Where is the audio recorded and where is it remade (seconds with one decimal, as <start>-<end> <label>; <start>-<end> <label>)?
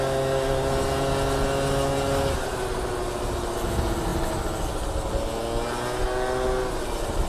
0.0-7.3 recorded